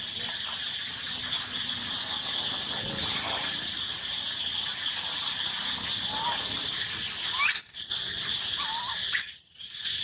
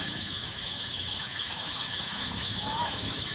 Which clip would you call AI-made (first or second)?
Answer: second